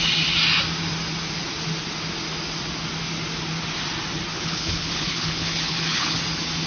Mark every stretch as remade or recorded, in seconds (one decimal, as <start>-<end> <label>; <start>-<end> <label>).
0.0-4.3 recorded; 4.3-6.2 remade; 6.2-6.7 recorded